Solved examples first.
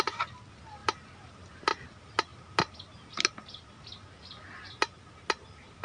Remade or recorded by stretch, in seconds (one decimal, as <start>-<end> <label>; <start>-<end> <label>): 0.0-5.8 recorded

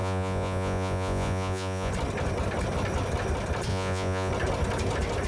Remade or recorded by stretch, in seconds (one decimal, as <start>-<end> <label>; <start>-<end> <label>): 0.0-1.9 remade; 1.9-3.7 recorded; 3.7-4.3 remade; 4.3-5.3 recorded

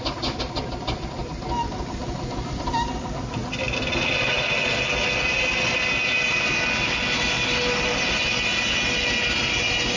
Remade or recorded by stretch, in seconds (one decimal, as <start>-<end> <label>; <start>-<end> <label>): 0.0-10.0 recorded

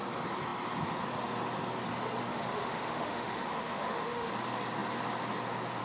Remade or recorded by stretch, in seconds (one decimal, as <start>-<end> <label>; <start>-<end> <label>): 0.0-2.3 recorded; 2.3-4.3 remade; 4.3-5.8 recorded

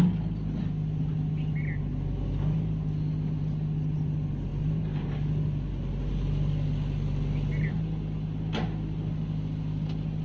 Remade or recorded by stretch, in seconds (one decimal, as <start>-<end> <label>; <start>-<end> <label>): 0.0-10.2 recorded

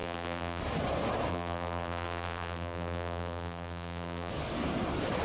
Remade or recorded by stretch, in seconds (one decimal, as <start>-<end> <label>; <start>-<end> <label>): 0.0-0.6 remade; 0.6-1.3 recorded; 1.3-4.3 remade; 4.3-5.2 recorded

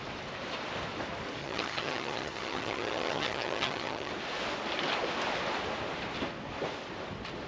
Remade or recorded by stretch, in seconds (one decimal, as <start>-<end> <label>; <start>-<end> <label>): 0.0-1.4 recorded; 1.4-4.1 remade; 4.1-7.5 recorded